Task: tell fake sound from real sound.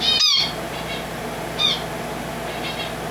real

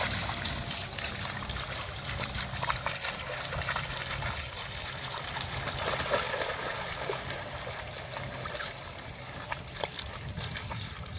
real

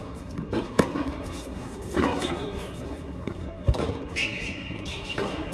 fake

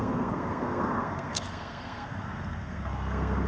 fake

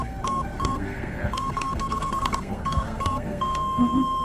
fake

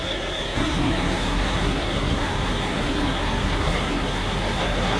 fake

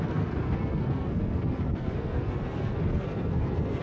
fake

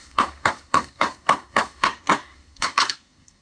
fake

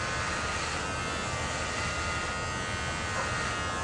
real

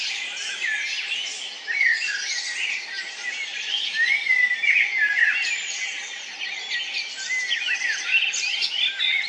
real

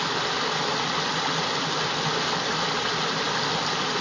real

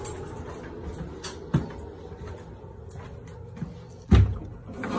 real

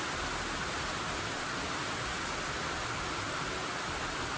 real